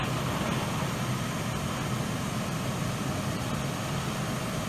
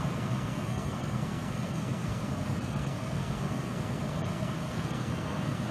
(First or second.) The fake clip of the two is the second